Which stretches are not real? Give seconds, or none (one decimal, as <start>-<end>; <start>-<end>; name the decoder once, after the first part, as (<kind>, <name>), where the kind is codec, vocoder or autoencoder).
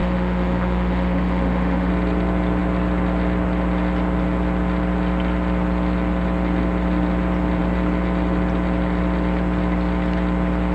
0.0-1.9 (autoencoder, DAC-VAE)